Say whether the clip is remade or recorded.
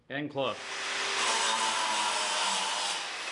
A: recorded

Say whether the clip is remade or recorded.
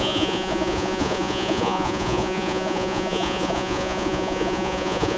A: remade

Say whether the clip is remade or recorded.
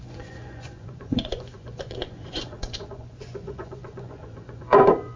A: remade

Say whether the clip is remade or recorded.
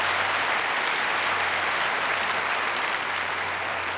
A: recorded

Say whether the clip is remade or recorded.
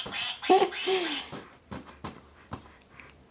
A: remade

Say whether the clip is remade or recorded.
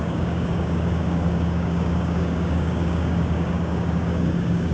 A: remade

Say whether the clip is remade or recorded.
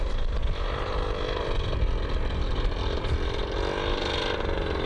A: remade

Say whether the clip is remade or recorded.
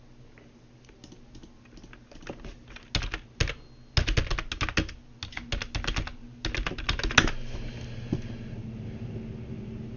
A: recorded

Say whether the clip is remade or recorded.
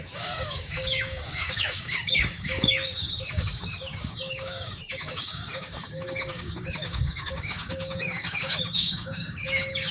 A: remade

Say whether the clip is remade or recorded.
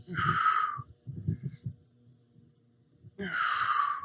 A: recorded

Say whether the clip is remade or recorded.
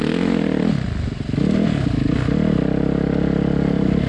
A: recorded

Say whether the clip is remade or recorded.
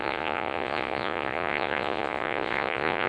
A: remade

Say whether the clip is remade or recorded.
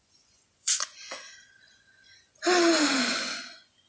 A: remade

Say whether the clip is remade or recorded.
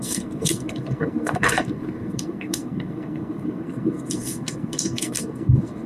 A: remade